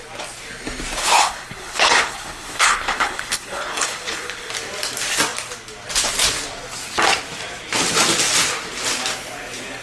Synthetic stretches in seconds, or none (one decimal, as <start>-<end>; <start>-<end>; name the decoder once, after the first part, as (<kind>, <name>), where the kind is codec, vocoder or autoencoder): 1.0-4.5 (codec, HILCodec)